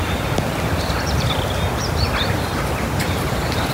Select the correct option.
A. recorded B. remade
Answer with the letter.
B